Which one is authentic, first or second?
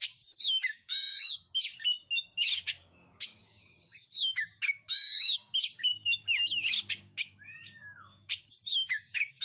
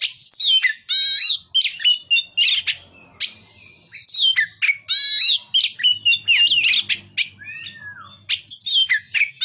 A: second